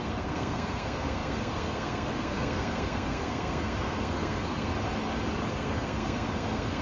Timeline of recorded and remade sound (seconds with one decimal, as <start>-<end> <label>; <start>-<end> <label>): 0.0-4.7 remade; 4.7-5.5 recorded; 5.5-6.8 remade